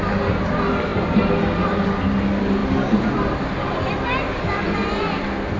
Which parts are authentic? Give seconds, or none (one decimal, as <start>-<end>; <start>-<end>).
0.0-5.6